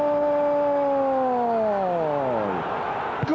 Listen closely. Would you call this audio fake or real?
real